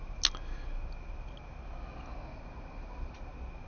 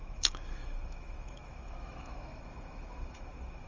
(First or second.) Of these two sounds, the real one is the first